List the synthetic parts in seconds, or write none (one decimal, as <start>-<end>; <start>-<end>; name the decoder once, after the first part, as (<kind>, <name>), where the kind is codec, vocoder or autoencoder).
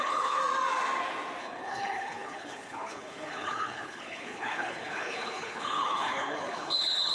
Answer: 0.0-0.4 (codec, HILCodec); 1.4-7.1